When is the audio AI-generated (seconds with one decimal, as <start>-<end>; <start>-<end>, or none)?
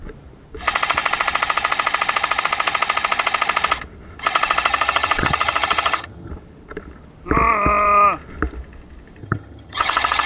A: 4.7-6.3; 9.2-10.3